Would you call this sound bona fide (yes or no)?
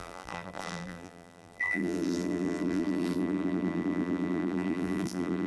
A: no